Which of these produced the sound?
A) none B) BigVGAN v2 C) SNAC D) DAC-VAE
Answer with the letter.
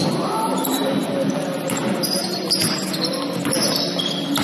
A